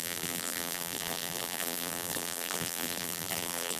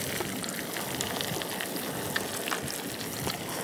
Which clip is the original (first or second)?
second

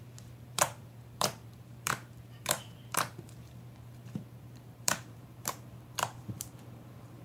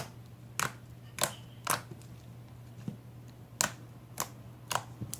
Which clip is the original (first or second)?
second